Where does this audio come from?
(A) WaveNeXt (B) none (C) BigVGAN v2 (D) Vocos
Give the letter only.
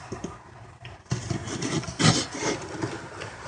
B